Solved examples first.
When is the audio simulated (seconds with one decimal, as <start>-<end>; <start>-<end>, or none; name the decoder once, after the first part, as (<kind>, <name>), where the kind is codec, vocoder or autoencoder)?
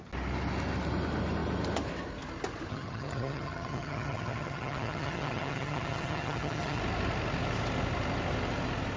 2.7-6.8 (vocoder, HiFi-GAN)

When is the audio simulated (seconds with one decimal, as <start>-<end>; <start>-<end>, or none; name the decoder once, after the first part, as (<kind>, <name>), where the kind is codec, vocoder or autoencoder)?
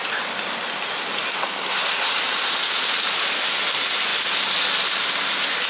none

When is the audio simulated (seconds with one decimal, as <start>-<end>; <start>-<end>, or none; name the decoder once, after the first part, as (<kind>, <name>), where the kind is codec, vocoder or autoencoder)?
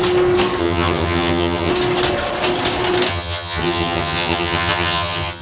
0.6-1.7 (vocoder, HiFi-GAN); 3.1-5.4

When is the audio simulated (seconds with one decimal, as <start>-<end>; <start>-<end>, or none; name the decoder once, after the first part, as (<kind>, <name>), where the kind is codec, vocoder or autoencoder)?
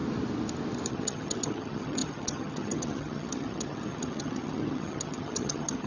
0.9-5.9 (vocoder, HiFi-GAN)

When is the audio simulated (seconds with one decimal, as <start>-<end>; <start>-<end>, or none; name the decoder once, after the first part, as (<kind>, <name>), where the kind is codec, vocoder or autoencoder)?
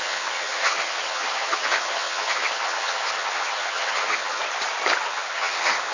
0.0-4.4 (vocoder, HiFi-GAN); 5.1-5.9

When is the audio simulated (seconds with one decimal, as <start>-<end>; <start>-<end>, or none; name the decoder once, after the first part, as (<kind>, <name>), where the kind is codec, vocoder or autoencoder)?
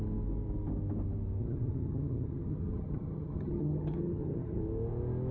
1.4-4.6 (vocoder, HiFi-GAN)